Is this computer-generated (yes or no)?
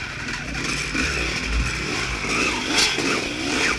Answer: no